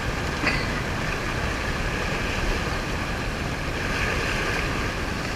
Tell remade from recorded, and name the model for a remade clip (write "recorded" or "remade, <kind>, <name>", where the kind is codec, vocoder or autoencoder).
recorded